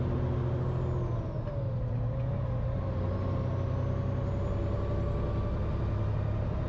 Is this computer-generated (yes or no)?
no